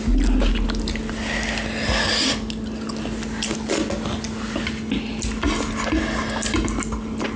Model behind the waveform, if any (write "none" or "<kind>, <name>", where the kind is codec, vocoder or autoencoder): none